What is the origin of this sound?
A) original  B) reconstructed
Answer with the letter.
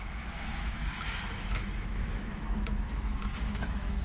B